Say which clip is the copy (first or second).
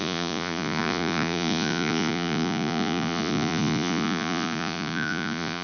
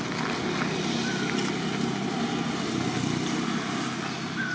first